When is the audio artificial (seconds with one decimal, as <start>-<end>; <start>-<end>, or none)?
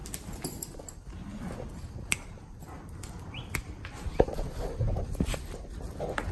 0.0-0.8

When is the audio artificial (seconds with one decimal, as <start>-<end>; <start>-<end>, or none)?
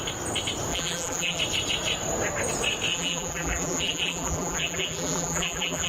0.7-1.4; 2.9-5.9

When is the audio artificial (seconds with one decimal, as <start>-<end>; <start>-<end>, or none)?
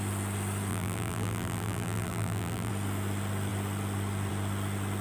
0.7-2.7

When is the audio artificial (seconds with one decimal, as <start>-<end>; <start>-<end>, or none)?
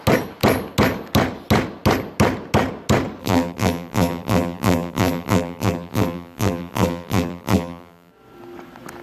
3.2-8.1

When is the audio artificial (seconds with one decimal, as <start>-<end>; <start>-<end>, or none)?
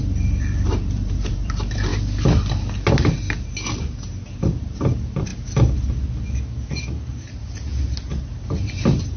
0.0-1.9; 4.6-5.3; 6.7-7.7; 8.2-9.2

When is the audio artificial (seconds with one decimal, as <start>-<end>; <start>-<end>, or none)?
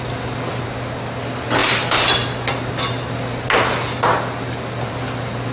none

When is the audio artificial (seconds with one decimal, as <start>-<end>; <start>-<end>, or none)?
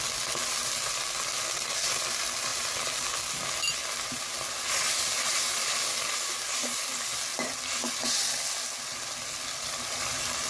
none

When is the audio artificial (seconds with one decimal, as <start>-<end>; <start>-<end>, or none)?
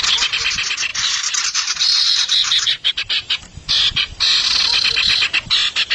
0.9-3.4